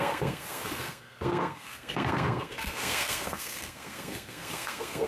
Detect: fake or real fake